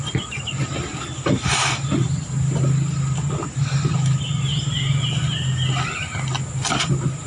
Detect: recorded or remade recorded